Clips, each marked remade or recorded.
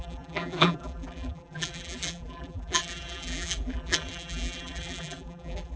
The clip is remade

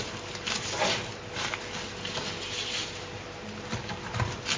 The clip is remade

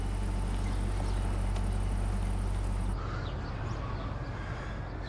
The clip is recorded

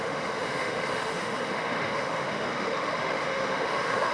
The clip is remade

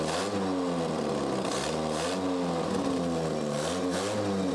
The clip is recorded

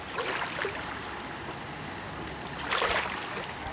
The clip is recorded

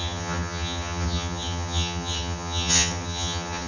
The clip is remade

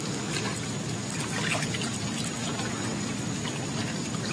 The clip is recorded